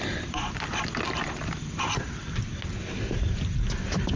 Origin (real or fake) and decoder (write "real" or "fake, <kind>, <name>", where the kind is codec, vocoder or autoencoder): real